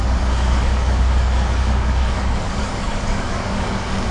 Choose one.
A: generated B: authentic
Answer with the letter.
A